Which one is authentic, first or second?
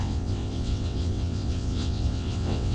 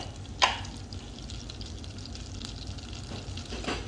second